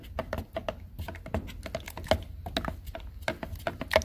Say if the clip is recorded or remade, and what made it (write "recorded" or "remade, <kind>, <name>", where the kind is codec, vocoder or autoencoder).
recorded